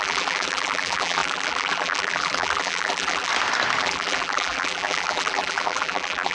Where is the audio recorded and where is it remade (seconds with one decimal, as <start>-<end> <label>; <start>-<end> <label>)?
0.0-3.3 remade; 3.3-3.8 recorded; 3.8-6.3 remade